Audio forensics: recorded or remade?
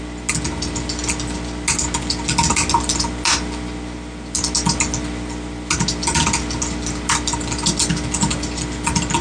recorded